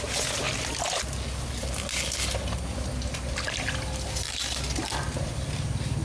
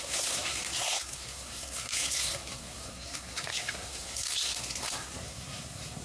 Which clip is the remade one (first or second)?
second